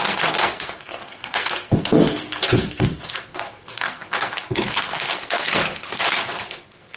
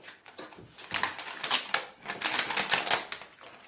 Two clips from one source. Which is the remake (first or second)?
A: first